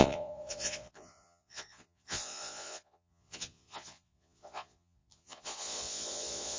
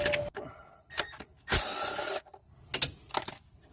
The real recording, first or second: second